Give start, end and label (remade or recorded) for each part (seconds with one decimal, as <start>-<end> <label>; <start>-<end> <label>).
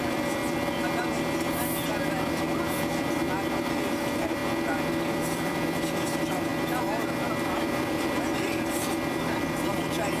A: 0.0-4.4 remade; 4.4-5.0 recorded; 5.0-6.5 remade; 6.5-7.6 recorded; 7.6-10.2 remade